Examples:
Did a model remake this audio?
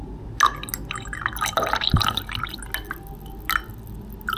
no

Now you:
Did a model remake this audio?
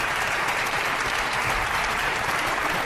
yes